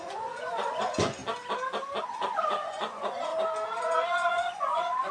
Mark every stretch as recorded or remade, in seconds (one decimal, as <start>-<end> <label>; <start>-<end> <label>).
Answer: 0.0-1.2 remade; 1.2-2.0 recorded; 2.0-3.3 remade; 3.3-3.8 recorded; 3.8-5.1 remade